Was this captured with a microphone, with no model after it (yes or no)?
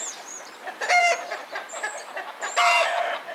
no